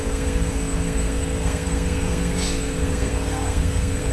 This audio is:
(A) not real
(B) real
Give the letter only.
A